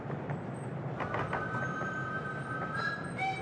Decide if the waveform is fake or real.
real